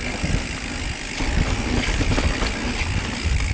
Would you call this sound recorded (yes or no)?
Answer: yes